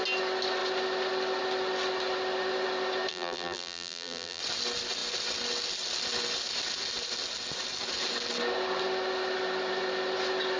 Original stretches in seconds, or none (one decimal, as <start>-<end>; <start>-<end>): 0.0-3.1; 4.4-10.6